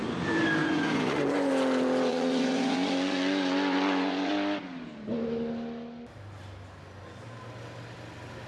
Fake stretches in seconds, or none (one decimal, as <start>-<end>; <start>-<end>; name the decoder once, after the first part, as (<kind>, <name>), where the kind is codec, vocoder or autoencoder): 0.6-1.5 (vocoder, Vocos); 2.1-4.3